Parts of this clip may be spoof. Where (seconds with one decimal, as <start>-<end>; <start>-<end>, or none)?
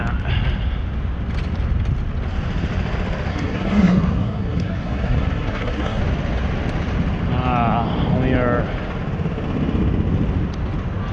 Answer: 3.3-6.0